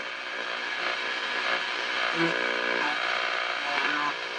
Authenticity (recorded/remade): recorded